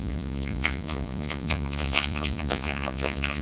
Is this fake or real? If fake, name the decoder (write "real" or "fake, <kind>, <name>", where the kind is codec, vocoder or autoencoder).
fake, vocoder, Vocos